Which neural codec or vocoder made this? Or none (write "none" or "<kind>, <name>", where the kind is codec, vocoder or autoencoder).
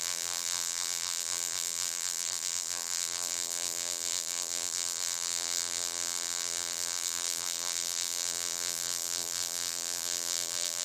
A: vocoder, BigVGAN v2